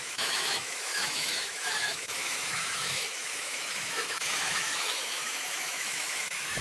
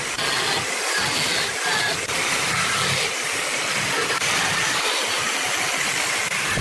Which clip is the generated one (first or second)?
first